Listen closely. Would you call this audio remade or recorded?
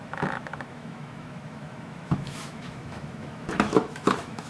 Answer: remade